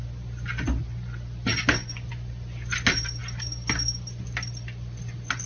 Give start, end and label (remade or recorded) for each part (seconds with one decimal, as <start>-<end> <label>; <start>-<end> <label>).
0.0-5.5 recorded